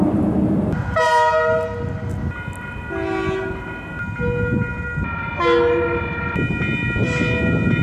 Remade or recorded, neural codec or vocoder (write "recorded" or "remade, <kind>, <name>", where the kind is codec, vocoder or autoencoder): recorded